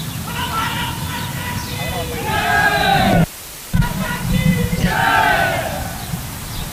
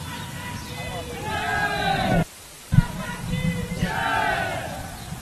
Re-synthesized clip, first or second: first